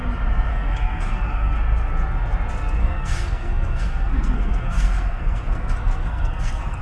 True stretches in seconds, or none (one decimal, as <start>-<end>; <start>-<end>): 0.0-0.5; 1.6-2.8

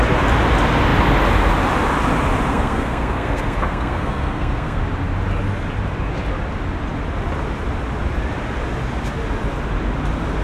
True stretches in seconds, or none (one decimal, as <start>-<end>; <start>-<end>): 0.0-2.5; 4.8-10.4